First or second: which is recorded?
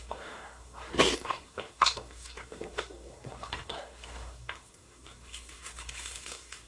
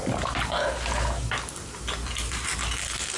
second